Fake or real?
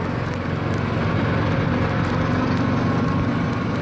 real